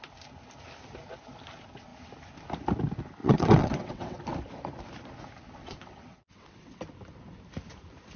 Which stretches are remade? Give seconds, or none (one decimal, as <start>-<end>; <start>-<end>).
3.2-4.2; 5.6-6.8